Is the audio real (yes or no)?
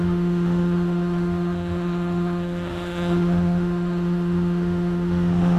no